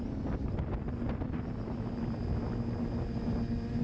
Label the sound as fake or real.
real